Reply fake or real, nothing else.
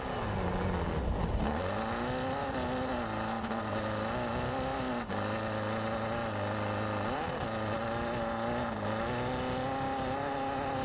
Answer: real